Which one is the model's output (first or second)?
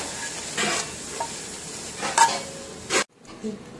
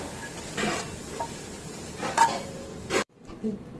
second